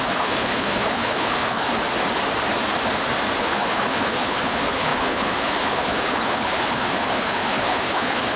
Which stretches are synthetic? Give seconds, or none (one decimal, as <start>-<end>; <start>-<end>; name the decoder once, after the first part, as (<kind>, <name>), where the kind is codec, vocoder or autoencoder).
0.0-1.8 (codec, HILCodec); 3.4-8.4